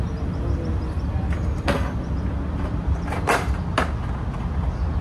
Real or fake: real